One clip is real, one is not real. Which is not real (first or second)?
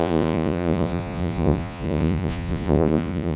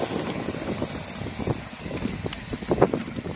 first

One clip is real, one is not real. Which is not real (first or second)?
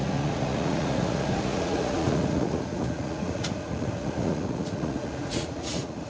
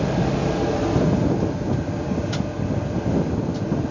first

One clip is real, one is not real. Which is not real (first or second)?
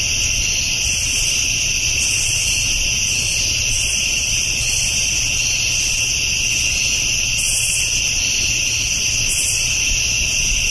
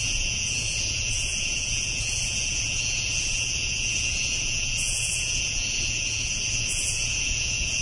second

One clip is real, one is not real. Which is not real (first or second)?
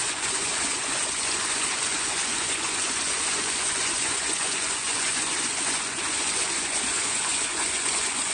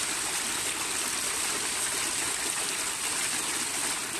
first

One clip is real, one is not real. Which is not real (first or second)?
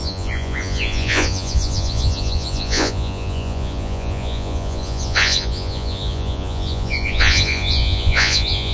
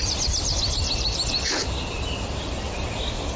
first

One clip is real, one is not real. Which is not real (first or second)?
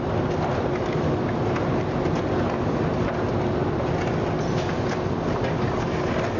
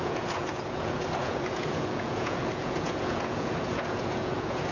second